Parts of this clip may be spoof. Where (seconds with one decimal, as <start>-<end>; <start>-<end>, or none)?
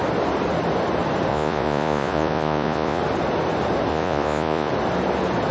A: 1.3-3.0; 3.9-4.7